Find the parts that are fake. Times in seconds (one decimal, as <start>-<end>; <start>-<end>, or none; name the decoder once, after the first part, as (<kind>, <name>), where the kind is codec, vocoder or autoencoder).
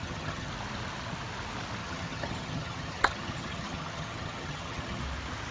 0.0-0.5 (vocoder, HiFi-GAN); 1.8-5.0